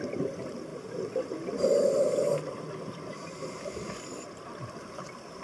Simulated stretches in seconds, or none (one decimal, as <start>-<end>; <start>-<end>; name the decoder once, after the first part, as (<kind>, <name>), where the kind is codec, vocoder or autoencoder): none